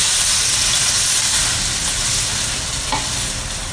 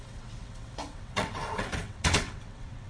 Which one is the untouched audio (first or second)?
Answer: first